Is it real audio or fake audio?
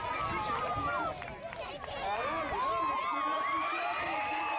real